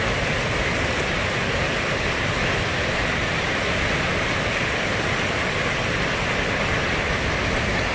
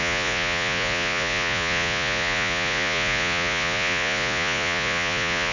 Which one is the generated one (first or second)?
second